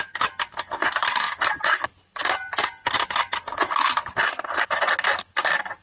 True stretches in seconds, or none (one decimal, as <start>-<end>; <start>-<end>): 0.0-5.8

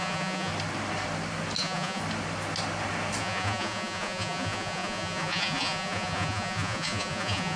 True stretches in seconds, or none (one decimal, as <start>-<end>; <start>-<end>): 0.5-1.6; 2.0-3.2

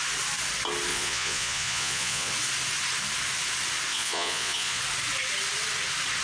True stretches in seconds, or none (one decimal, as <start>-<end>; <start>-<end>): 0.0-0.9; 2.3-3.9; 4.8-6.2